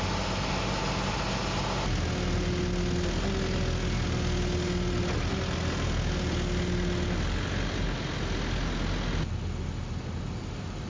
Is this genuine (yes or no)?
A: yes